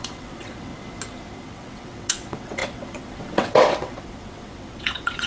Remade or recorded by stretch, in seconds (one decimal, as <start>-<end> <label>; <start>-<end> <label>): 0.0-0.7 remade; 0.7-1.3 recorded; 1.3-5.3 remade